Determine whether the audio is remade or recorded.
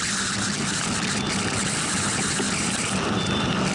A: recorded